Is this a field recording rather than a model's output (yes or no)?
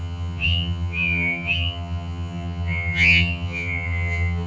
no